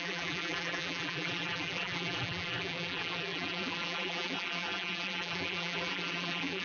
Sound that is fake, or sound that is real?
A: fake